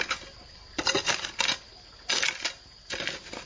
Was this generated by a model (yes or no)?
no